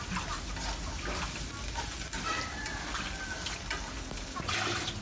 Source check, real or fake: real